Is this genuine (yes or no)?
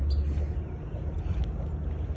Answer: yes